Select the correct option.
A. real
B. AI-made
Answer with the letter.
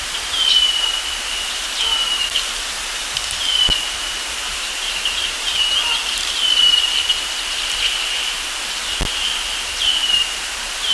A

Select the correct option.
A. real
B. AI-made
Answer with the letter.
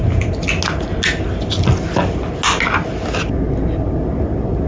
A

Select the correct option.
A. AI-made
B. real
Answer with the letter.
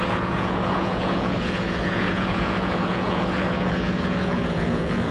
A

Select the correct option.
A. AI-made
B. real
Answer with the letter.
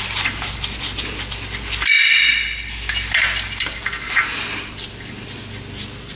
B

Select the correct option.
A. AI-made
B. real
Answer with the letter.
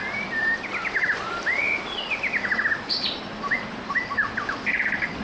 B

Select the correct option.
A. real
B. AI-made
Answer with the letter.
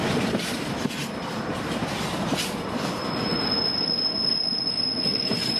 A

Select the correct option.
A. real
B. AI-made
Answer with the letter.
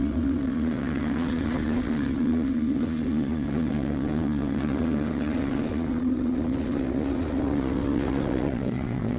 B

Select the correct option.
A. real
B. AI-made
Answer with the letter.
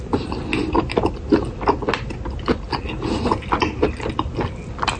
A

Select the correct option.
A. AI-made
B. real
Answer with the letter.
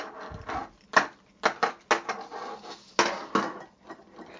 B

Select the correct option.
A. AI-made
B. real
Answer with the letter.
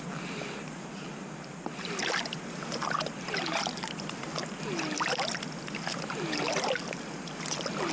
B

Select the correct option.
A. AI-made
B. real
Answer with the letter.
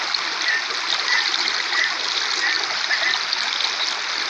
B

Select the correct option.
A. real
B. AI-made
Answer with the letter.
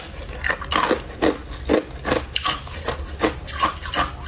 A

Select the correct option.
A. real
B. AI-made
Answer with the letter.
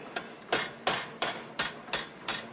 A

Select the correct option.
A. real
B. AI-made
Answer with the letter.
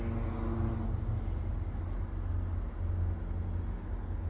A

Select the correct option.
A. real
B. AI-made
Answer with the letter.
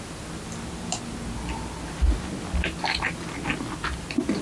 A